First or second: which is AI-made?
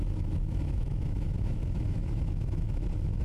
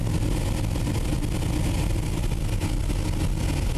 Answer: first